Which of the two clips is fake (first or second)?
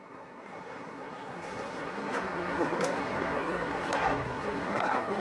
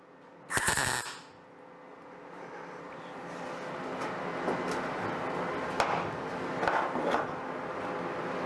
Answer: first